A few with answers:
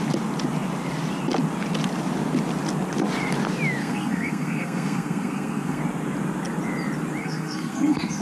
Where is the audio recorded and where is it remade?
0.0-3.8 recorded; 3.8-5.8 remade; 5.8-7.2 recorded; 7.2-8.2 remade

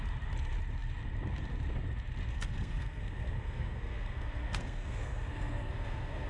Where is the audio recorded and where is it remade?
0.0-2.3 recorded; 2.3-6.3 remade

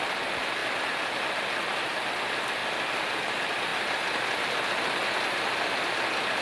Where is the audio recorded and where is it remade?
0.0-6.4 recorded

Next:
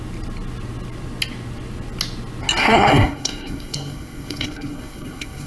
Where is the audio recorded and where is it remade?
0.0-2.6 recorded; 2.6-5.5 remade

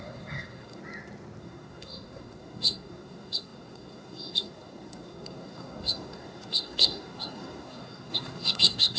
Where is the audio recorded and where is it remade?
0.0-0.8 remade; 0.8-1.4 recorded; 1.4-9.0 remade

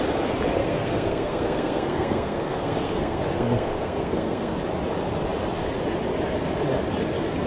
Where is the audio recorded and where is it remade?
0.0-0.6 recorded; 0.6-4.5 remade; 4.5-7.5 recorded

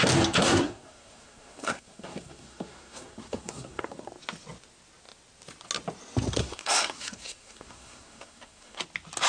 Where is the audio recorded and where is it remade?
0.0-0.4 recorded; 0.4-4.1 remade; 4.1-6.4 recorded; 6.4-8.8 remade; 8.8-9.3 recorded